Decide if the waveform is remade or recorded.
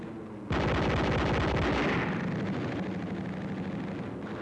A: recorded